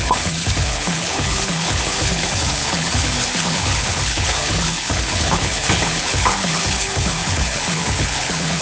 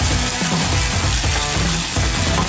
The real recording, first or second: second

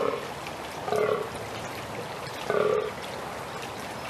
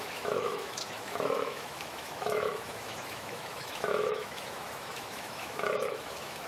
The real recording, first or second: first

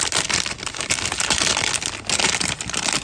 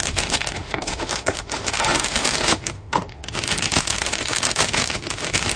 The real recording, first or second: first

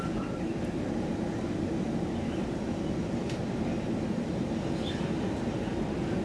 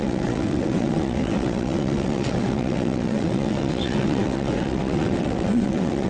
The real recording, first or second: first